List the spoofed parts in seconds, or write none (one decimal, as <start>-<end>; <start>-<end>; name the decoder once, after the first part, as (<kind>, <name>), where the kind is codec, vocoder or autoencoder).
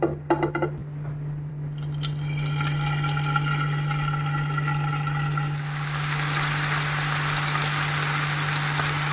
none